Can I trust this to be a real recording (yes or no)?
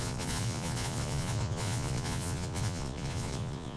no